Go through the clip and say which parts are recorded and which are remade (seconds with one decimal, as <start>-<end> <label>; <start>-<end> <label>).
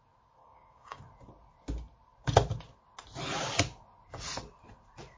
0.0-0.4 recorded; 0.4-1.0 remade; 1.0-5.2 recorded